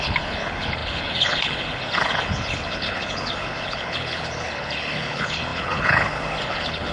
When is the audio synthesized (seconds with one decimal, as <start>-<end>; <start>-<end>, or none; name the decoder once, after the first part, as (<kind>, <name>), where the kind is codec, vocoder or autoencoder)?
0.0-6.9 (codec, HILCodec)